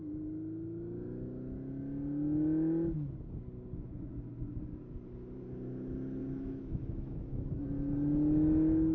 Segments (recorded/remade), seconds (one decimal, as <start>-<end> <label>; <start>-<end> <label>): 0.0-6.2 recorded; 6.2-7.6 remade; 7.6-8.9 recorded